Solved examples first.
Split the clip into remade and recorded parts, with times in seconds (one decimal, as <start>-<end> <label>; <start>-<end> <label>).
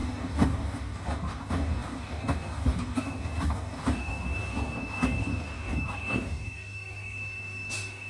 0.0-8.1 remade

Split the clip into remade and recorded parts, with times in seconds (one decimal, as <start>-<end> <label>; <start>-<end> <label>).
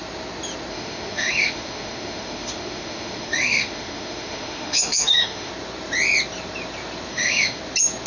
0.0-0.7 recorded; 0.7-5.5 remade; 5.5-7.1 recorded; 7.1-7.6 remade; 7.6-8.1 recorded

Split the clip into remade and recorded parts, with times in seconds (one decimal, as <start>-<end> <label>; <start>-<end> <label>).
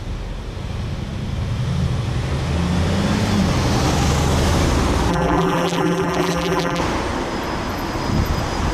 0.0-5.1 recorded; 5.1-6.8 remade; 6.8-8.7 recorded